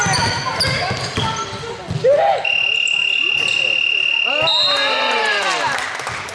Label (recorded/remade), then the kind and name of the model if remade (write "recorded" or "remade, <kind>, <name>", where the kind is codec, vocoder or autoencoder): recorded